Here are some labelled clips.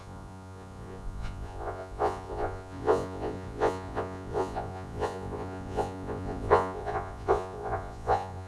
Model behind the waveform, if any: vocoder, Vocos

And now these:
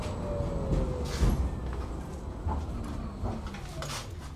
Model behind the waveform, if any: none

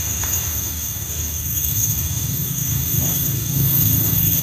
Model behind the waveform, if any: codec, DAC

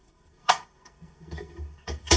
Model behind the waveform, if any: codec, SNAC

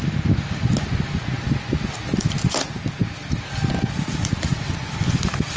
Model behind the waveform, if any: none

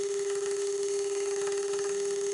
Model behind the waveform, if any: autoencoder, DAC-VAE